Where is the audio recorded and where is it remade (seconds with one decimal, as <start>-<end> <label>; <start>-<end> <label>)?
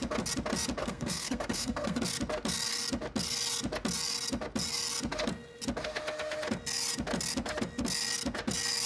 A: 0.0-0.8 recorded; 0.8-2.0 remade; 2.0-8.9 recorded